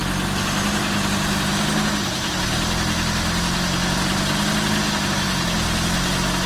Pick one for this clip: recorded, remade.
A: recorded